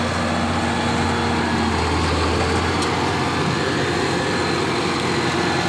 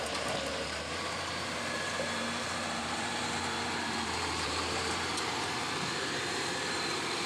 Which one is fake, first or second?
second